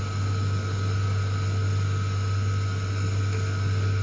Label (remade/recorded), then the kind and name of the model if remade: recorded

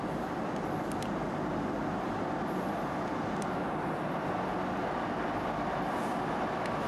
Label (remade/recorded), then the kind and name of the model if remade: recorded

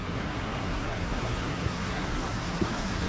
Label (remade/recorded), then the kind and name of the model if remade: remade, codec, SNAC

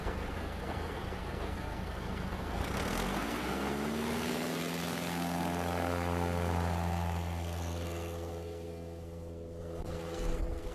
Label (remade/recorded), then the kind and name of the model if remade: remade, codec, SNAC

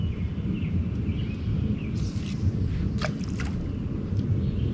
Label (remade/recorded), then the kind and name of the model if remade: recorded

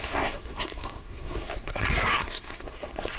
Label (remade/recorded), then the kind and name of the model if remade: remade, codec, SNAC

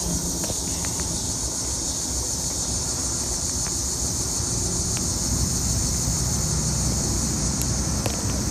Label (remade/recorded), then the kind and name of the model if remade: recorded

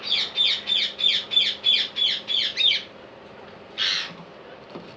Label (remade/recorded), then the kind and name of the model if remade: recorded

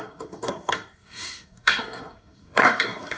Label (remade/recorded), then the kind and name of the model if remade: remade, codec, SNAC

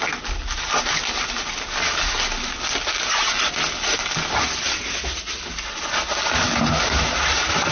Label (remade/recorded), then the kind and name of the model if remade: recorded